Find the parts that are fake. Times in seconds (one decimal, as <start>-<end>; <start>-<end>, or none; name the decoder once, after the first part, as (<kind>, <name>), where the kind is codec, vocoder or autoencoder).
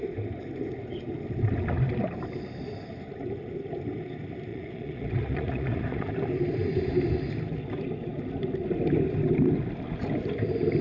4.5-6.1 (vocoder, Vocos)